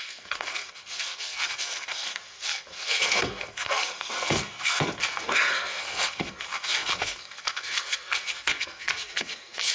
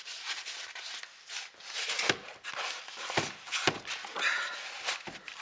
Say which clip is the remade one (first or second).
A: first